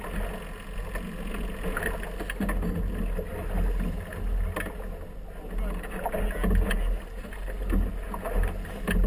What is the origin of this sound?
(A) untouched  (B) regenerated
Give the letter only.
A